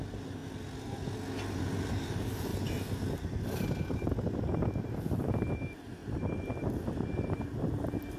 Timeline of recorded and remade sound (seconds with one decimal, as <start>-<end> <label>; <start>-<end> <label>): 0.0-0.4 remade; 0.4-1.9 recorded; 1.9-2.5 remade; 2.5-5.2 recorded; 5.2-6.0 remade; 6.0-6.9 recorded; 6.9-8.2 remade